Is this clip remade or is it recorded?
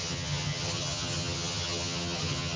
remade